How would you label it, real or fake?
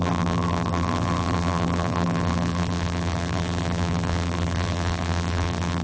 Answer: fake